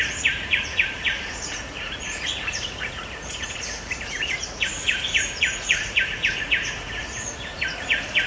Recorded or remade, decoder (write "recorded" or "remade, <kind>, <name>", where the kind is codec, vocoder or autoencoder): remade, vocoder, Vocos